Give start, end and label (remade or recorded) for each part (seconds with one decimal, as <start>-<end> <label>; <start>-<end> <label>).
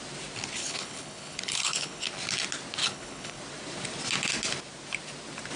0.0-0.6 recorded; 0.6-2.1 remade; 2.1-2.8 recorded; 2.8-3.4 remade; 3.4-5.6 recorded